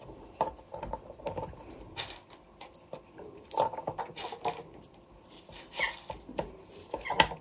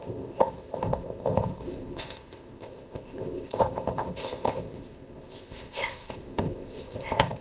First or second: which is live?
first